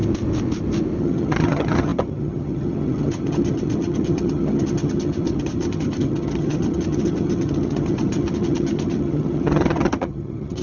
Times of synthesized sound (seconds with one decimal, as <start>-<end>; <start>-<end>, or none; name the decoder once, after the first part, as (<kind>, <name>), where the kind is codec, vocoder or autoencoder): 1.0-10.6 (vocoder, HiFi-GAN)